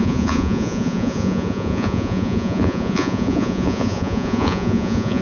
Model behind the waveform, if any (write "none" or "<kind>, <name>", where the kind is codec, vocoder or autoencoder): vocoder, Vocos